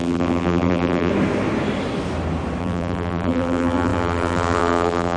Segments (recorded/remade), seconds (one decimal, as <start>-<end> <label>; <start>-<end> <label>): 0.0-1.1 remade; 1.1-2.6 recorded; 2.6-5.2 remade